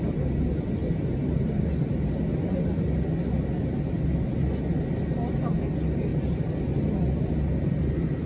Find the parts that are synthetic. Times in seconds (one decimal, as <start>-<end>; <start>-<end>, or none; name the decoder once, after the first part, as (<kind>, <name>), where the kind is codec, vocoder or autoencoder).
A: 0.8-2.1 (vocoder, BigVGAN v2); 6.1-6.6